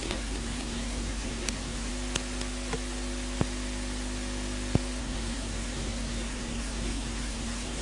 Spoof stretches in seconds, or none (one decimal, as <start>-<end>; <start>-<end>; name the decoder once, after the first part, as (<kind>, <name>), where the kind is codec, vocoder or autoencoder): 0.0-1.9 (codec, SNAC); 5.0-7.8

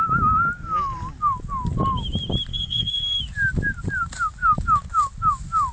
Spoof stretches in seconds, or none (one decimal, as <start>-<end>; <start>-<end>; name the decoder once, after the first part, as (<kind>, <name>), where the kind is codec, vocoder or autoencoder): 2.5-3.2 (codec, SNAC)

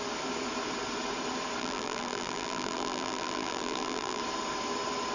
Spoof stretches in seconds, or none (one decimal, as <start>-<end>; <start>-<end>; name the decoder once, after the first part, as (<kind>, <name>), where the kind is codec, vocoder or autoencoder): 1.6-4.2 (vocoder, BigVGAN v2)

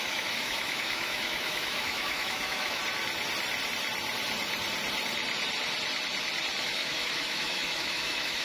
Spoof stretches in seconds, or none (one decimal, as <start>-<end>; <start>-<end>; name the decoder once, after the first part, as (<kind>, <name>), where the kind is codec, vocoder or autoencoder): 0.0-2.8 (autoencoder, DAC-VAE); 6.6-8.4

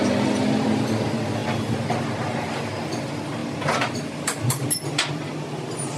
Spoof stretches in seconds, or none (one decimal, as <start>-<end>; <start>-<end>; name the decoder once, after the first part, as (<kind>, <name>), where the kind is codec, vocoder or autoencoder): none

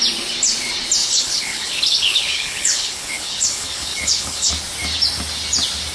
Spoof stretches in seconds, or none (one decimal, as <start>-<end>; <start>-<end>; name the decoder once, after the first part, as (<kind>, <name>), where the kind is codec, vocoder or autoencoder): 1.0-4.5 (codec, HILCodec)

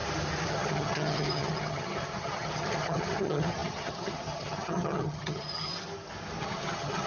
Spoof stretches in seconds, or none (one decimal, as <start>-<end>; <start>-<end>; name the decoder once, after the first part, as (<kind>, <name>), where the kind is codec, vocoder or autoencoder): 0.5-5.7 (vocoder, HiFi-GAN); 6.4-7.1